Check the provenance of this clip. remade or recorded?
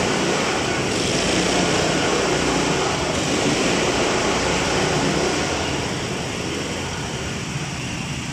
remade